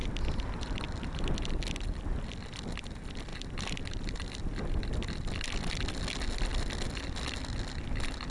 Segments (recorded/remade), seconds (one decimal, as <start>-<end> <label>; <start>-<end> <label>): 0.0-2.0 remade; 2.0-3.3 recorded; 3.3-4.5 remade; 4.5-6.5 recorded; 6.5-7.3 remade; 7.3-8.3 recorded